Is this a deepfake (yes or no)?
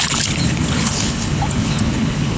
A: yes